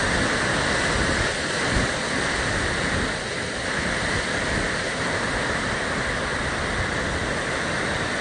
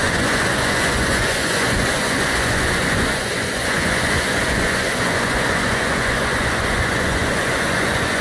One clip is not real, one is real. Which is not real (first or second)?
second